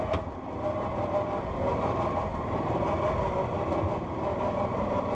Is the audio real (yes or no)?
yes